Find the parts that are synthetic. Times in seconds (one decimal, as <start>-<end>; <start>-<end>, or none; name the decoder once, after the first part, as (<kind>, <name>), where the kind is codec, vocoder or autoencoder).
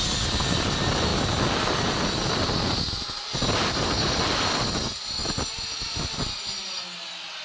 none